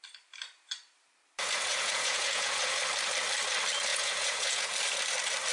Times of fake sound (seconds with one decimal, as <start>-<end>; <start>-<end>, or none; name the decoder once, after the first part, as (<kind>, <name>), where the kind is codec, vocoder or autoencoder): 1.7-2.8 (vocoder, Vocos); 3.9-4.7